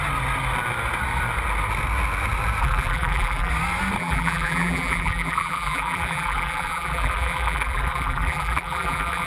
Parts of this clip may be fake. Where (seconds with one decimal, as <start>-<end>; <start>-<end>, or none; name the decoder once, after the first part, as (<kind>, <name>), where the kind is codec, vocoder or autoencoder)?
2.6-3.5 (vocoder, BigVGAN v2); 4.0-9.3

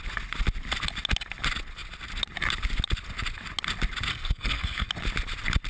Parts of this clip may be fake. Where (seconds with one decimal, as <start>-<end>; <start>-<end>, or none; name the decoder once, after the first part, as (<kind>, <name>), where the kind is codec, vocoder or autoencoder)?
4.1-4.9 (codec, SNAC)